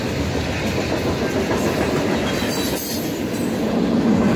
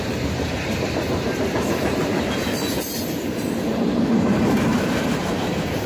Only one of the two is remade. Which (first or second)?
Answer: second